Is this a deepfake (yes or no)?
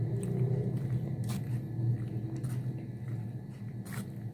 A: no